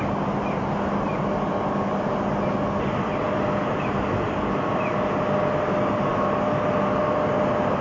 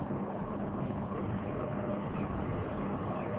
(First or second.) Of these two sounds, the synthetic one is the second